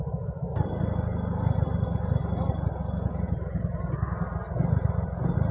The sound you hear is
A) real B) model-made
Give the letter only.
A